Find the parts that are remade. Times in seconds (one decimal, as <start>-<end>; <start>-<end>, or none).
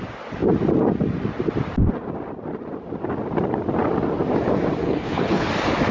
4.8-5.5